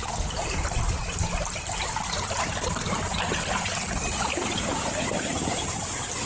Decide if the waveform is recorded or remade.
recorded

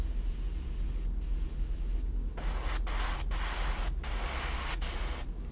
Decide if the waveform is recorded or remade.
recorded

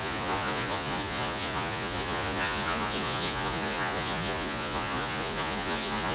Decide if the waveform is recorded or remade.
remade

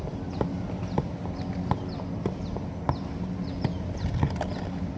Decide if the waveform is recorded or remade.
recorded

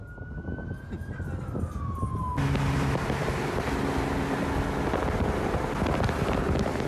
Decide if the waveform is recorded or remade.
recorded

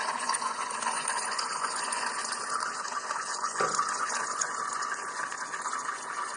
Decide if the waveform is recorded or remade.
remade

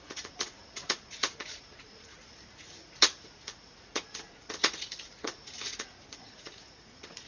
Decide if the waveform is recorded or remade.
remade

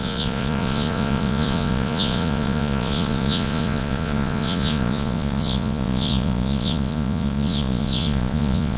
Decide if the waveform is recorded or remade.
remade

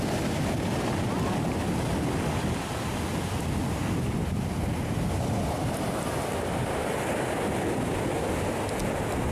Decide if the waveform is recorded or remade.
recorded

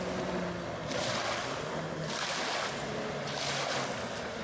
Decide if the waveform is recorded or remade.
recorded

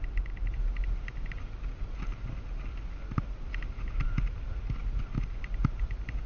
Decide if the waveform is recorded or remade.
recorded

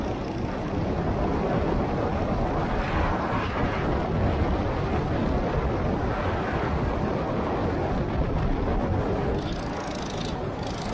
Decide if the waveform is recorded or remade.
recorded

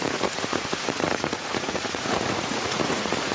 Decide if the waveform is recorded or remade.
remade